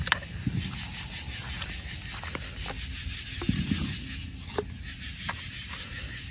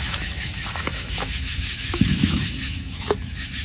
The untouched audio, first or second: first